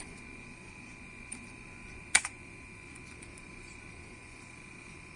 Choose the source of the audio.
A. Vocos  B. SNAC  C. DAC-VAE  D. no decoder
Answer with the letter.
A